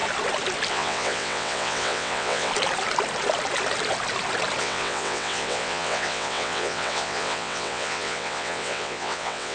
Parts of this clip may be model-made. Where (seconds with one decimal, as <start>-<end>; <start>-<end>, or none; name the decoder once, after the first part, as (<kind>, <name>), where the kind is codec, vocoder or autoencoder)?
0.7-2.5 (vocoder, WaveNeXt); 4.6-9.5